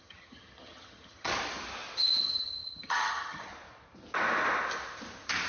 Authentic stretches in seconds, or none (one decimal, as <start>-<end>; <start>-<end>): 1.3-2.2; 3.5-5.5